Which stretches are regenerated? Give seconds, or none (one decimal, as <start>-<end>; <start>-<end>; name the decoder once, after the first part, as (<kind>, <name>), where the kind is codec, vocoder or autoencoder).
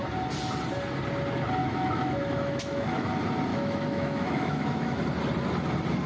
1.6-3.1 (autoencoder, DAC-VAE); 3.5-5.0